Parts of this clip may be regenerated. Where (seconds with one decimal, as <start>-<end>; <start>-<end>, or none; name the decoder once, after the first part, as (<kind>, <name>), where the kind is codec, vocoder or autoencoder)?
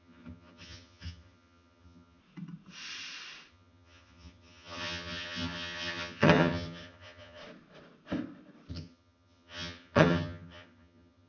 0.0-2.2 (vocoder, HiFi-GAN); 3.5-7.4; 8.7-11.3